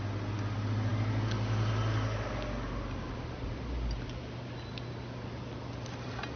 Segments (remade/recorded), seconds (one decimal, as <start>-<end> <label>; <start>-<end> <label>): 0.0-6.4 recorded